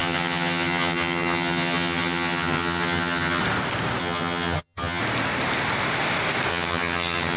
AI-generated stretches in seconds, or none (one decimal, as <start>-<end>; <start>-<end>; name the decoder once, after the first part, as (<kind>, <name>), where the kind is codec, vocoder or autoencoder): 0.0-3.4 (vocoder, HiFi-GAN); 4.0-5.0; 6.5-7.4